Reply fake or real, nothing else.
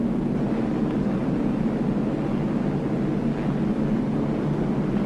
real